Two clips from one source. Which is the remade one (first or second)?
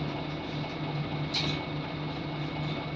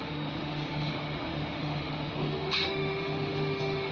second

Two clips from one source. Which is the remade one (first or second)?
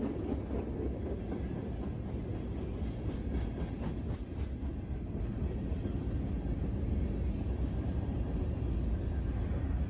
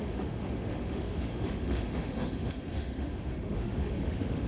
second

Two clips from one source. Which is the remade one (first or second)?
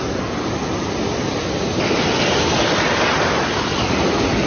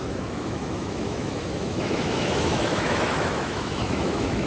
second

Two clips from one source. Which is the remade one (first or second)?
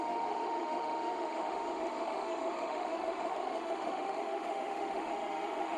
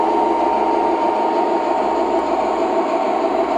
first